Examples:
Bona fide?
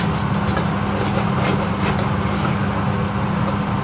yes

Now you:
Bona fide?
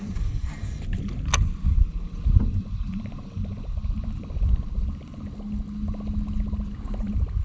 yes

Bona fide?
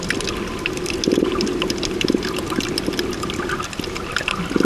yes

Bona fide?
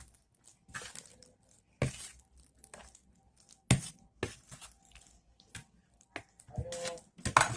yes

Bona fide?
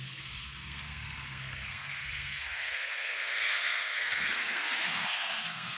no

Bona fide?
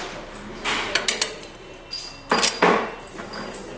yes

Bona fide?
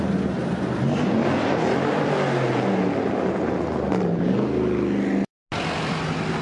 yes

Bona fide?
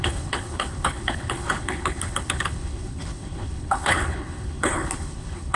no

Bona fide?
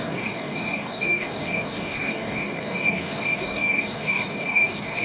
no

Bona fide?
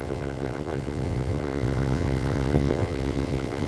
no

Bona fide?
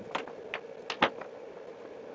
yes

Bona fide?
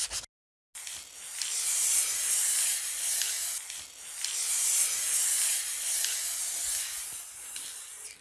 yes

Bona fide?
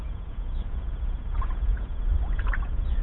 no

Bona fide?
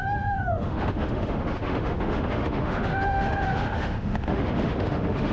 no